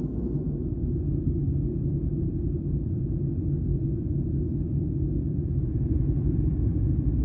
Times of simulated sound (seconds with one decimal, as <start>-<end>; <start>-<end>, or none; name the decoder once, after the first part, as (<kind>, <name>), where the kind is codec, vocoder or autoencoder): 1.7-3.1 (vocoder, BigVGAN v2); 5.2-6.8